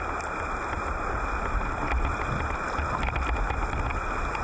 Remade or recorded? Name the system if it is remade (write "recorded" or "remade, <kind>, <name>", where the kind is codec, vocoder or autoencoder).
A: recorded